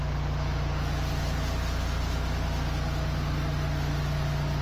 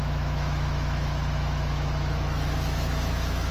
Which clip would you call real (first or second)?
first